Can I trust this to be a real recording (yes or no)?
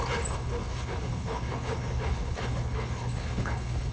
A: no